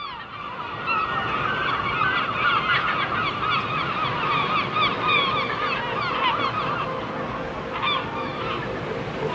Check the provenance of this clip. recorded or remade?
recorded